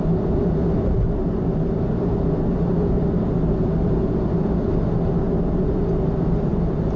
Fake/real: real